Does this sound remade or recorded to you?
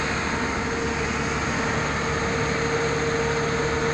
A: recorded